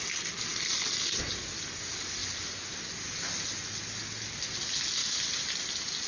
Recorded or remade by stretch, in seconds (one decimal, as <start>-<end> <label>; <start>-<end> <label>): 0.0-6.1 recorded